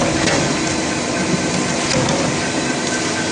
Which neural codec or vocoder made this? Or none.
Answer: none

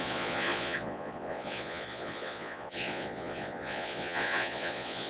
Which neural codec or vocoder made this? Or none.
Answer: vocoder, Vocos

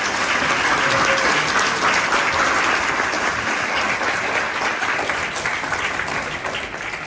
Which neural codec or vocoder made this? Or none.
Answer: none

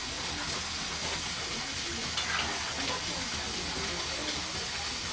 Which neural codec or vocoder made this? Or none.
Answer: none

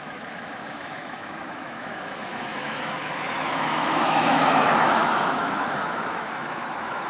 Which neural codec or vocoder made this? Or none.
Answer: autoencoder, DAC-VAE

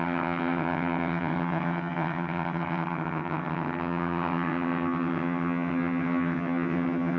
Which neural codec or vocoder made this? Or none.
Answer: vocoder, HiFi-GAN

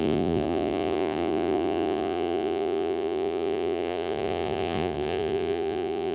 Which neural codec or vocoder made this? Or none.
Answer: vocoder, Vocos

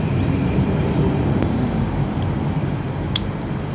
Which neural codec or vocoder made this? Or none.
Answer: vocoder, BigVGAN v2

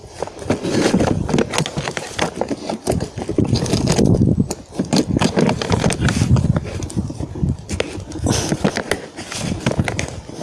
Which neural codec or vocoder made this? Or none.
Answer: none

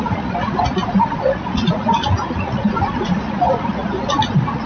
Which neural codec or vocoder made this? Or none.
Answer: vocoder, Vocos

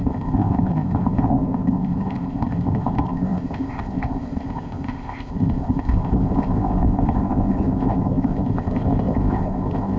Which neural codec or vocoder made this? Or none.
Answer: codec, ZipCodec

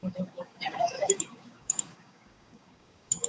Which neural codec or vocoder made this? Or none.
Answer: codec, DAC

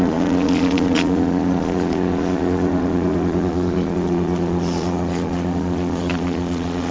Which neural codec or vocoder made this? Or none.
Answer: vocoder, Vocos